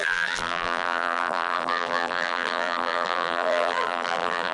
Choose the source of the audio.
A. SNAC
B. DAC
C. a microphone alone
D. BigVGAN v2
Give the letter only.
D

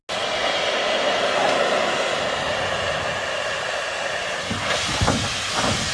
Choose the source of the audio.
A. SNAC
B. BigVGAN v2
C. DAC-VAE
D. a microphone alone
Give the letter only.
D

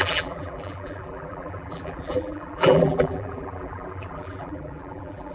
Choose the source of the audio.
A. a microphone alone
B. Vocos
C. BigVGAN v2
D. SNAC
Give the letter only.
C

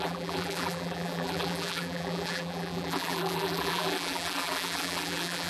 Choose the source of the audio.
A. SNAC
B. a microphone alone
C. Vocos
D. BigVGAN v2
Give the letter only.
D